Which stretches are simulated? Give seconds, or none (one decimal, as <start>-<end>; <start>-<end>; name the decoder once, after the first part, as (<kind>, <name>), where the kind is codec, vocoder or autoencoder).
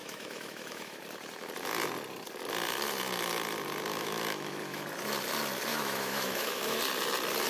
0.0-1.0 (autoencoder, DAC-VAE); 3.9-4.8; 5.7-6.8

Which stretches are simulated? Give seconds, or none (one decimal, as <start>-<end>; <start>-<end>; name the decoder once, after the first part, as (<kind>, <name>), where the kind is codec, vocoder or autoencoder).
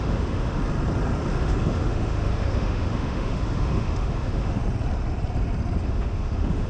0.0-0.6 (autoencoder, DAC-VAE); 1.3-4.6; 5.8-6.7